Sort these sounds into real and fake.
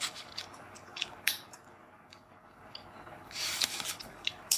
fake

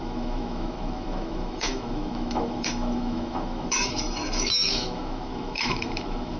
fake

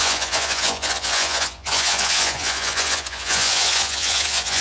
fake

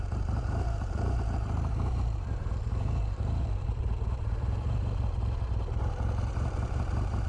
fake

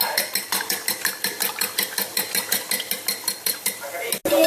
real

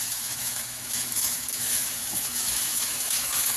fake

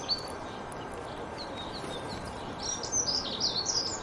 real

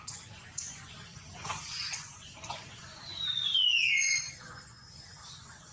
fake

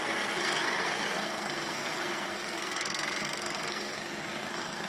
fake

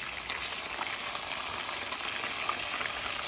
real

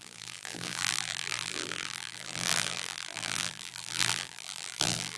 fake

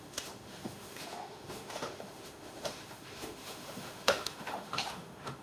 fake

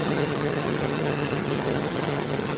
fake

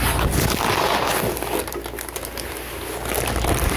real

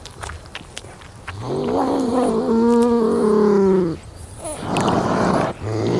real